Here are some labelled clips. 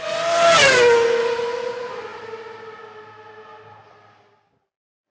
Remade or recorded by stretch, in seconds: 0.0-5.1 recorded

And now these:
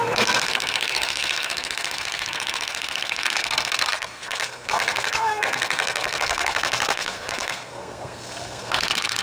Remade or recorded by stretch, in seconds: 0.0-9.2 remade

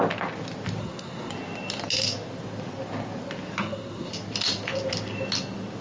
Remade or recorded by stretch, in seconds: 0.0-0.8 recorded; 0.8-1.3 remade; 1.3-3.6 recorded; 3.6-4.1 remade; 4.1-5.8 recorded

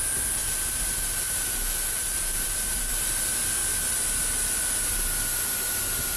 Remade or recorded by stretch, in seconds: 0.0-0.4 recorded; 0.4-2.9 remade; 2.9-6.2 recorded

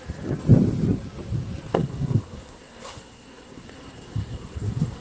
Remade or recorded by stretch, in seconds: 0.0-1.7 recorded; 1.7-5.0 remade

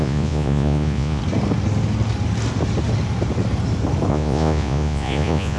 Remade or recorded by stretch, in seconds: 0.0-1.2 remade; 1.2-4.1 recorded; 4.1-5.6 remade

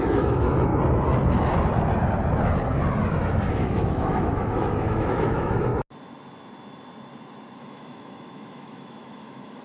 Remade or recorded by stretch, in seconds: 0.0-0.7 remade; 0.7-3.5 recorded; 3.5-5.7 remade; 5.7-7.6 recorded; 7.6-9.6 remade